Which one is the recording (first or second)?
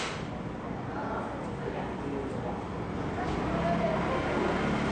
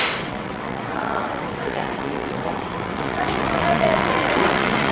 first